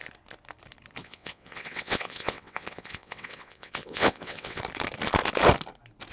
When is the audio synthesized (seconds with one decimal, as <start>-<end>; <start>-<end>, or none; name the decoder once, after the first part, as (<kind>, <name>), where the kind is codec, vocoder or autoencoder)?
1.0-4.6 (vocoder, WaveNeXt)